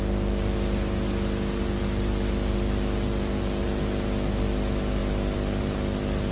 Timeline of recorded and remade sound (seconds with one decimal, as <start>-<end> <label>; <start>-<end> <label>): 0.0-5.0 recorded; 5.0-6.3 remade